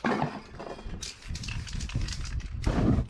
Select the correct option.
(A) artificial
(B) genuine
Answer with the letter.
B